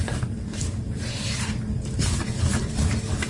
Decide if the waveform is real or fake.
fake